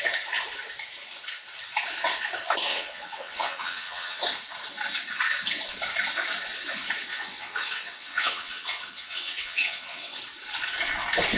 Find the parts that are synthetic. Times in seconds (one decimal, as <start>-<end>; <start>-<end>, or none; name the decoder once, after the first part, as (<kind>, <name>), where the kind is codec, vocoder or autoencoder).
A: 2.7-4.2 (vocoder, WaveNeXt); 7.1-10.2